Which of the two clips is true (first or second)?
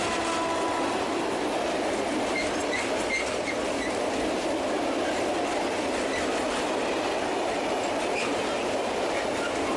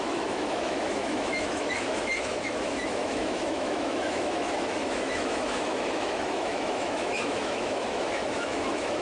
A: first